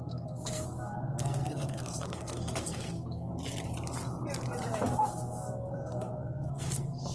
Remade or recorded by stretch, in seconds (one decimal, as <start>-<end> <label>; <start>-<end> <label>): 0.0-3.3 remade; 3.3-5.0 recorded; 5.0-7.1 remade